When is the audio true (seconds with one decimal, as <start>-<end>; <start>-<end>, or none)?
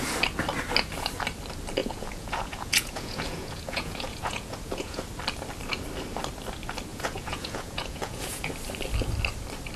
0.0-1.8; 5.0-6.9; 8.5-9.8